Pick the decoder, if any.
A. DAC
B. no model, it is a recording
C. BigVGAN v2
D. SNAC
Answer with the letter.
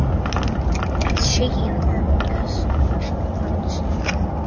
B